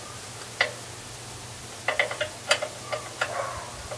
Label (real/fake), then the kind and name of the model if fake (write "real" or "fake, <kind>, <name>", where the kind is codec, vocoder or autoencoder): real